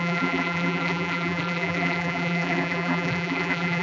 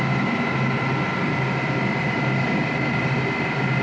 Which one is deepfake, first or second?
first